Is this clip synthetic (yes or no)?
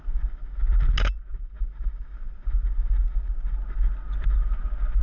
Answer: no